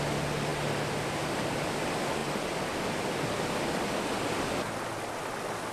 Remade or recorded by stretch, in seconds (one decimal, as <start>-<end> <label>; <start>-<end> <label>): 0.0-5.7 recorded